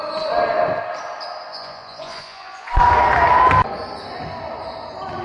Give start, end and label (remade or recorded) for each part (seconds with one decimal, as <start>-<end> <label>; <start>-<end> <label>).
0.0-1.5 recorded; 1.5-2.7 remade; 2.7-5.2 recorded